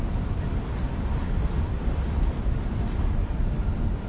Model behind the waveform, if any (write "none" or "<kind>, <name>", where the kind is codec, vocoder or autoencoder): vocoder, BigVGAN v2